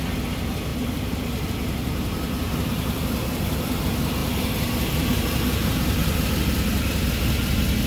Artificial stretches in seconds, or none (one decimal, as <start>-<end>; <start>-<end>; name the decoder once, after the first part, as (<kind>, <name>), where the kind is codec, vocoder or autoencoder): 0.7-3.8 (vocoder, BigVGAN v2); 4.2-6.3

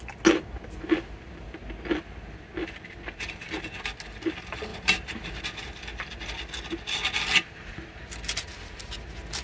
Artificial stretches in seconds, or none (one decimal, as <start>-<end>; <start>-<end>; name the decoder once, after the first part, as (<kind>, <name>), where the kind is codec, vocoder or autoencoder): 4.7-5.4 (vocoder, BigVGAN v2); 8.5-9.0

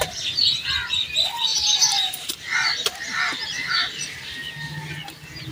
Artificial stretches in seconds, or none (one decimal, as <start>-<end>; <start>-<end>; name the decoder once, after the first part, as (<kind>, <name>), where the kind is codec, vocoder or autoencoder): 1.5-2.3 (vocoder, BigVGAN v2)